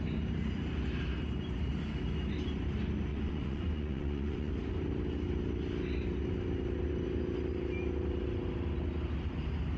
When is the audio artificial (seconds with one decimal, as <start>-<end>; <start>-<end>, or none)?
3.1-4.5